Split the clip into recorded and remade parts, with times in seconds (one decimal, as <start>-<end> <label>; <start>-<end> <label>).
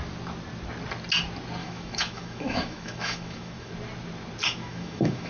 0.0-1.6 recorded; 1.6-3.7 remade; 3.7-4.4 recorded; 4.4-5.3 remade